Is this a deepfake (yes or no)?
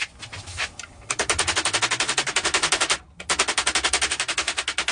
no